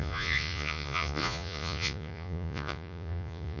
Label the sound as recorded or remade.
remade